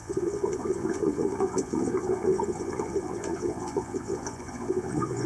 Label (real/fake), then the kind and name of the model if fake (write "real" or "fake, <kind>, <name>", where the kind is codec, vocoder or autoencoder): fake, vocoder, Vocos